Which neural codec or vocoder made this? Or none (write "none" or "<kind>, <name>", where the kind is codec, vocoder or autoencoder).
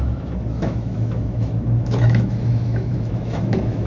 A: autoencoder, DAC-VAE